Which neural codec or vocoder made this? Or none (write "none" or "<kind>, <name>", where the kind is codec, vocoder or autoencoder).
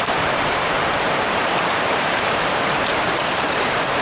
vocoder, BigVGAN v2